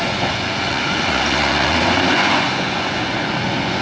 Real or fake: fake